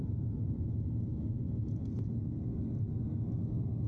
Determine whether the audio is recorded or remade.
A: recorded